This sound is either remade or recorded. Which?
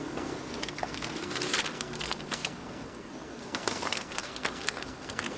remade